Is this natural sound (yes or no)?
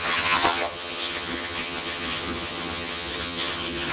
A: no